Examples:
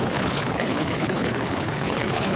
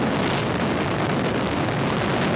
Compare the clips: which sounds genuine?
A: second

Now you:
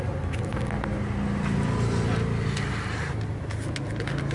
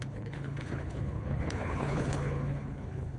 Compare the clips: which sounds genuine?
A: first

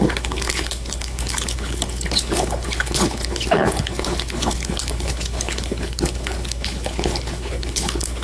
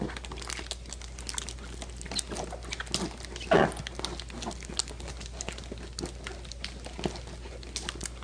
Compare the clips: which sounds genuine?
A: second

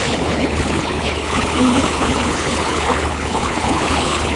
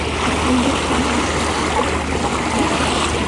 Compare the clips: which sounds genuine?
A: second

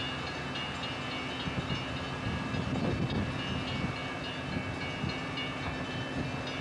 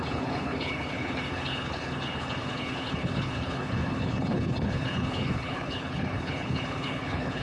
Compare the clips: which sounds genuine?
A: first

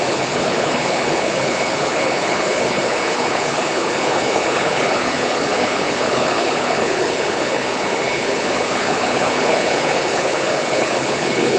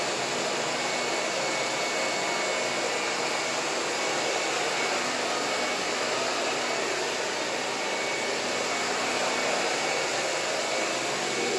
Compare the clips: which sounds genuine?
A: second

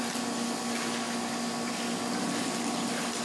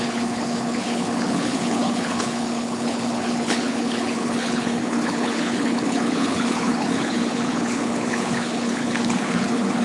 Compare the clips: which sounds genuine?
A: first